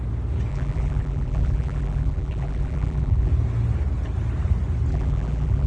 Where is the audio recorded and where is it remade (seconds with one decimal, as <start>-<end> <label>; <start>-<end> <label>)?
0.0-0.5 recorded; 0.5-3.3 remade; 3.3-4.9 recorded; 4.9-5.7 remade